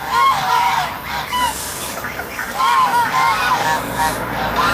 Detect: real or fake fake